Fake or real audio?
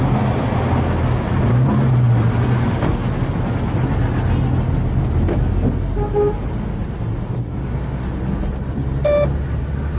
real